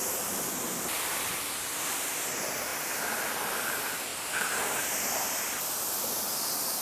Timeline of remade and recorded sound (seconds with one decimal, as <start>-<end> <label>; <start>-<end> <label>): 0.0-6.8 recorded

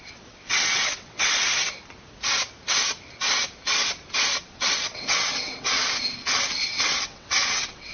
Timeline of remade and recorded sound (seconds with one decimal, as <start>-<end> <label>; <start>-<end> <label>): 0.0-1.5 remade; 1.5-4.4 recorded; 4.4-5.8 remade; 5.8-6.5 recorded; 6.5-7.9 remade

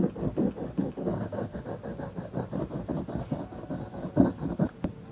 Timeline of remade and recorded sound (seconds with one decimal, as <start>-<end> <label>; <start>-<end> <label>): 0.0-1.0 recorded; 1.0-1.6 remade; 1.6-5.1 recorded